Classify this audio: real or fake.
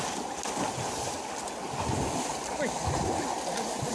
real